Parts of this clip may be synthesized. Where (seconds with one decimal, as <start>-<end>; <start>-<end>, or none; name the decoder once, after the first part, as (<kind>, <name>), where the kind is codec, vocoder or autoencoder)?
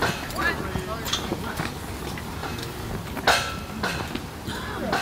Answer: 2.4-2.9 (vocoder, BigVGAN v2)